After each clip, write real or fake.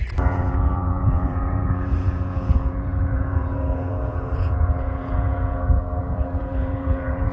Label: fake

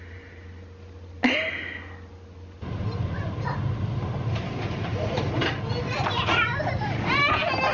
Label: real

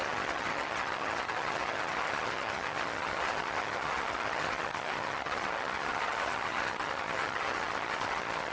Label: fake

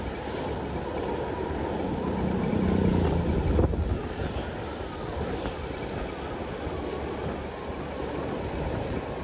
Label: real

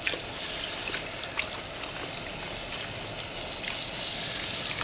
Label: real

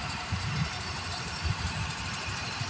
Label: fake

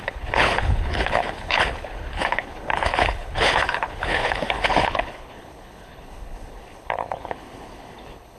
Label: fake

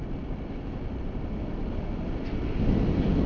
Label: real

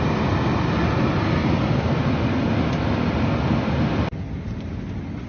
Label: real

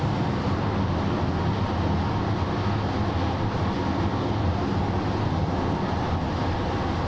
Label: real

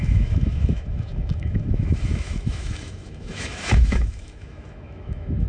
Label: fake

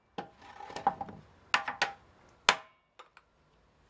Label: real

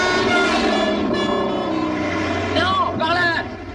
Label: real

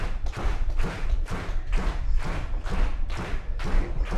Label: real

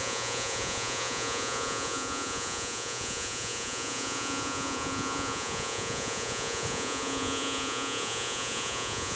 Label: fake